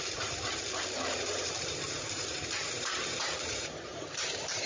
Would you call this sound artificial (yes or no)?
yes